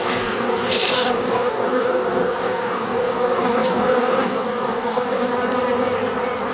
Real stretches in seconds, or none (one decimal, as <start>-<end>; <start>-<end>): 5.3-6.5